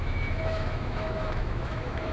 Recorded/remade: remade